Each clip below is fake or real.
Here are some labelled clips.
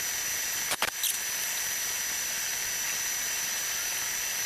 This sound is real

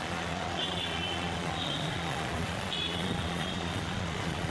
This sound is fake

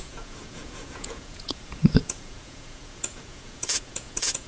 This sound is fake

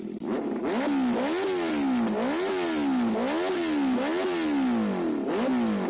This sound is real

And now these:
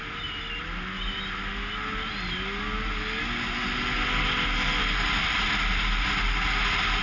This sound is real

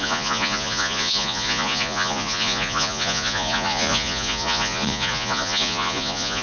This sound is fake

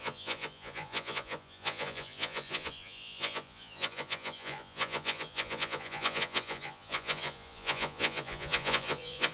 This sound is fake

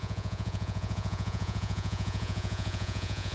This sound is fake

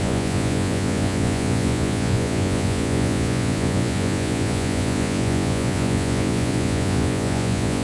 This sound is fake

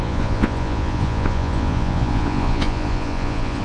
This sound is fake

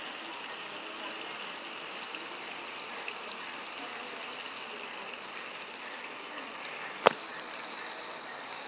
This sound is real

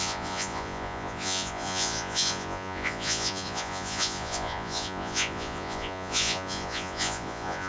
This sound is fake